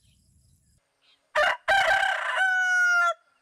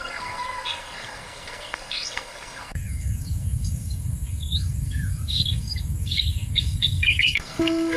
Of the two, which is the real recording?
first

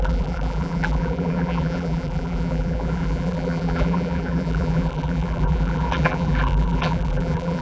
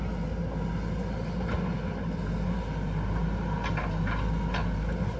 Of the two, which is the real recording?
second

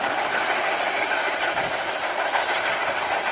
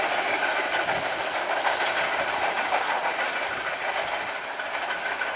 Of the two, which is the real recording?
second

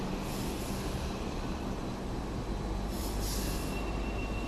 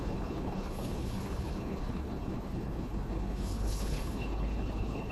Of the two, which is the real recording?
first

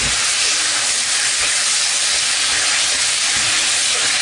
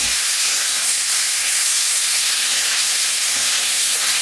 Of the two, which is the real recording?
first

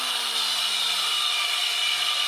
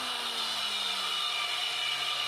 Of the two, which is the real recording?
second